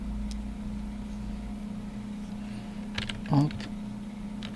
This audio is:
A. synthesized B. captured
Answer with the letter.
B